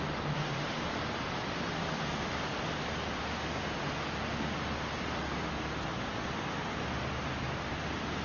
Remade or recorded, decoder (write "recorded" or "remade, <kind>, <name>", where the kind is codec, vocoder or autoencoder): recorded